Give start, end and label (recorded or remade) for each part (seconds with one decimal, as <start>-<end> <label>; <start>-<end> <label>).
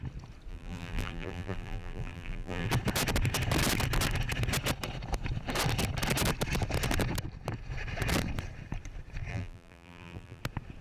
0.0-0.5 recorded; 0.5-2.7 remade; 2.7-9.3 recorded; 9.3-10.4 remade; 10.4-10.8 recorded